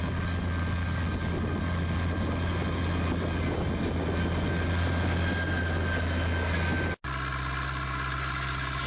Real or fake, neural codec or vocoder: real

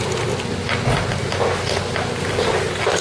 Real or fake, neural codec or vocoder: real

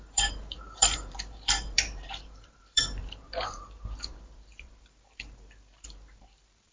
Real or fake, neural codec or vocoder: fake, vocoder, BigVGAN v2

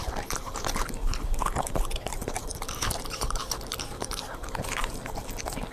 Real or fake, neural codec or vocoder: fake, vocoder, BigVGAN v2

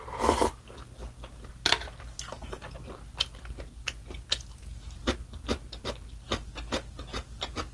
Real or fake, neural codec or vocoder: real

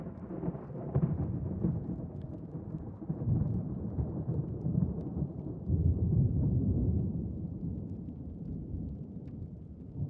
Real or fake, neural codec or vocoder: fake, vocoder, BigVGAN v2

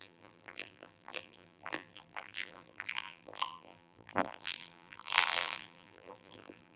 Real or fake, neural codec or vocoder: fake, vocoder, BigVGAN v2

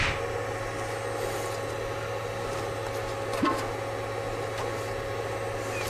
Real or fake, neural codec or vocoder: real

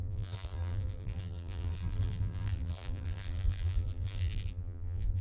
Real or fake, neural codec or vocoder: fake, vocoder, BigVGAN v2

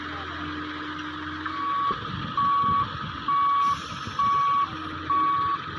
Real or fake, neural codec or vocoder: real